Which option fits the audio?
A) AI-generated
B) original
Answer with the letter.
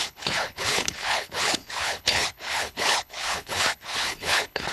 A